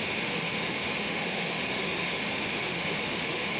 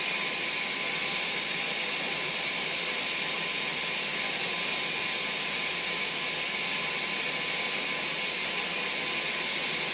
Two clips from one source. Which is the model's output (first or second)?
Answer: first